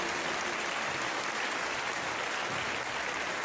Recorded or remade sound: recorded